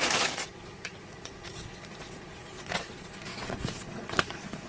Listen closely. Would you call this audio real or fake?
fake